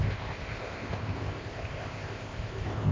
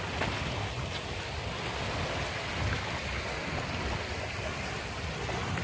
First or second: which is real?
second